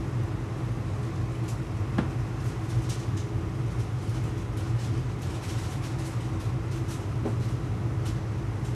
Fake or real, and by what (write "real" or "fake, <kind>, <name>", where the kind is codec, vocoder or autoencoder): real